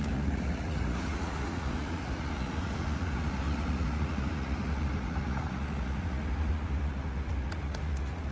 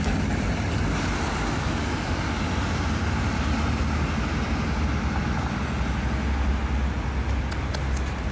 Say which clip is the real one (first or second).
second